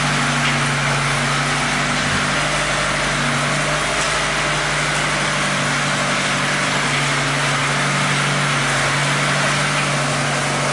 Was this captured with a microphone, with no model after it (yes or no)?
yes